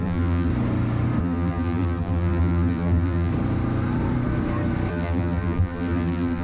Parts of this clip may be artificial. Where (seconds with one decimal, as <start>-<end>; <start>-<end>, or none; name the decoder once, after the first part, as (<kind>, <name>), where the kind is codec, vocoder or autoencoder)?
0.0-0.5 (vocoder, BigVGAN v2); 1.2-3.3; 4.9-6.4

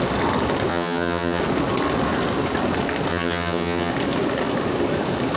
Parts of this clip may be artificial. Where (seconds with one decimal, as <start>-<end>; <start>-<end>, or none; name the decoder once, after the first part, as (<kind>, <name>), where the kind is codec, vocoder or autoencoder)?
0.7-1.4 (vocoder, HiFi-GAN); 3.1-3.9

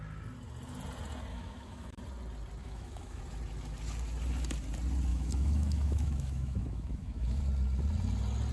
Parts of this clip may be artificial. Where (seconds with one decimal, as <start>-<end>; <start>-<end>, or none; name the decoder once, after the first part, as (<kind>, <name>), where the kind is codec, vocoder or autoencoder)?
1.3-2.0 (autoencoder, DAC-VAE); 2.6-3.2; 5.1-7.4

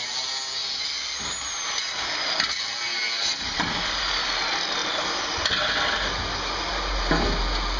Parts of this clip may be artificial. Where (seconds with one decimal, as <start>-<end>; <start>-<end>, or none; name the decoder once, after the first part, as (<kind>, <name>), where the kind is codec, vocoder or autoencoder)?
none

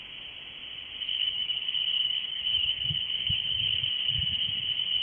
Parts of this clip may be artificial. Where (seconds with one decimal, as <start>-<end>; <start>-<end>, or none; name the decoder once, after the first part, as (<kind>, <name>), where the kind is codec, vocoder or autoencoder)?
1.1-4.1 (codec, DAC)